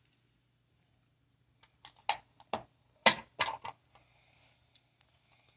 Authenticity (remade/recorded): recorded